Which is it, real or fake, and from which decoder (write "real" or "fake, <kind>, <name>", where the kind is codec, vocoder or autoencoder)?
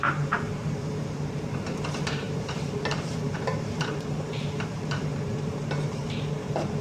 fake, vocoder, BigVGAN v2